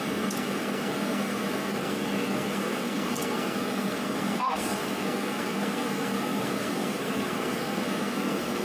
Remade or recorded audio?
remade